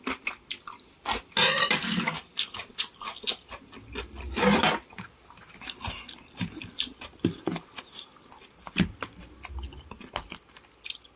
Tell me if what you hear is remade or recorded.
recorded